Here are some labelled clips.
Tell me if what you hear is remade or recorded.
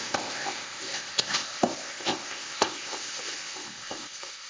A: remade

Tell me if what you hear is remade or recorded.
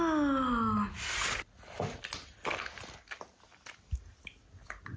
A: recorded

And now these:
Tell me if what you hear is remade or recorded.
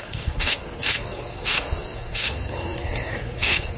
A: remade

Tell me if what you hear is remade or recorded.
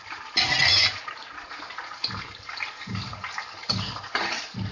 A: recorded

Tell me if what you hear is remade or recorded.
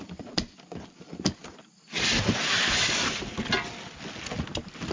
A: recorded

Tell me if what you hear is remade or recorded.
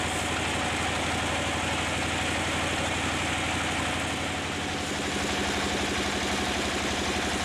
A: recorded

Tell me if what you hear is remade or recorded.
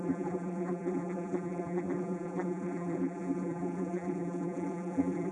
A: remade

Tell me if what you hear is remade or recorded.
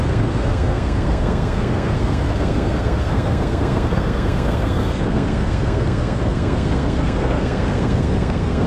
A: remade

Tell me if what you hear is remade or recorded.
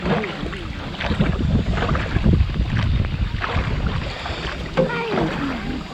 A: recorded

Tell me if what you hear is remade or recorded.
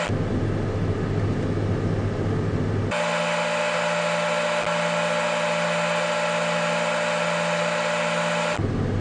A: recorded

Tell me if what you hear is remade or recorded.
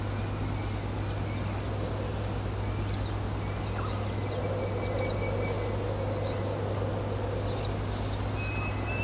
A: recorded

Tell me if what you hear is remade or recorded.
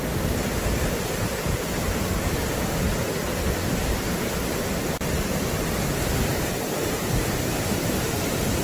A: recorded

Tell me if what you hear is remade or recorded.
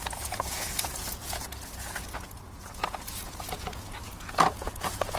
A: remade